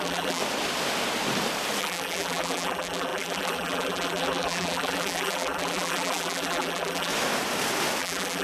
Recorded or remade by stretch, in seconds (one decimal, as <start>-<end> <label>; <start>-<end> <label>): 0.0-0.4 remade; 0.4-1.8 recorded; 1.8-7.1 remade; 7.1-8.0 recorded; 8.0-8.4 remade

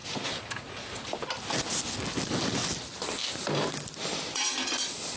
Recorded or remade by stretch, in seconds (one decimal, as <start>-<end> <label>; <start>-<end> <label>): 0.0-5.2 recorded

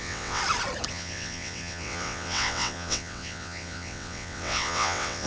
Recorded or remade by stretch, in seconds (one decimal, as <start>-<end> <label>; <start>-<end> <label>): 0.0-0.4 remade; 0.4-0.9 recorded; 0.9-5.3 remade

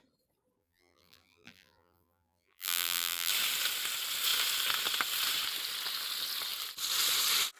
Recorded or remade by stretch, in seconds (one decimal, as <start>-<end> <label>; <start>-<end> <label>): 0.0-0.6 recorded; 0.6-3.3 remade; 3.3-7.6 recorded

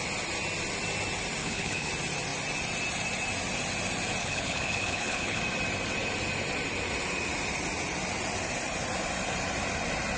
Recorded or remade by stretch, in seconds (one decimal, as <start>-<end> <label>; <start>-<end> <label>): 0.0-1.4 recorded; 1.4-1.9 remade; 1.9-4.2 recorded; 4.2-5.4 remade; 5.4-10.2 recorded

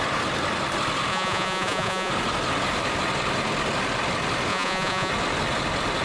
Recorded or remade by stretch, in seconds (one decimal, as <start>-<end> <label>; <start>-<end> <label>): 0.0-1.1 recorded; 1.1-2.1 remade; 2.1-4.5 recorded; 4.5-5.1 remade; 5.1-6.0 recorded

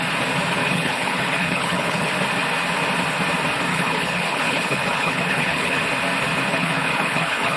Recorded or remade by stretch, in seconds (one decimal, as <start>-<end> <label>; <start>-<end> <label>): 0.0-0.6 recorded; 0.6-2.1 remade; 2.1-3.7 recorded; 3.7-5.8 remade; 5.8-6.5 recorded; 6.5-7.6 remade

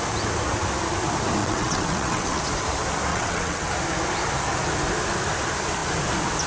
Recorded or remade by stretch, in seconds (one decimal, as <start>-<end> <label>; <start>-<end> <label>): 0.0-1.4 recorded; 1.4-2.4 remade; 2.4-3.1 recorded; 3.1-3.7 remade; 3.7-6.5 recorded